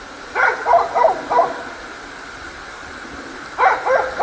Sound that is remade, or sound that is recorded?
recorded